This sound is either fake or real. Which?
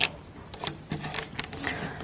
real